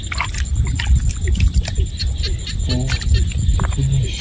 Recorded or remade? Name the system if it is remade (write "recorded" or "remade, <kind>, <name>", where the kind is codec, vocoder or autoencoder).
recorded